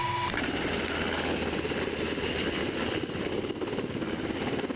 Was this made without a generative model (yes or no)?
yes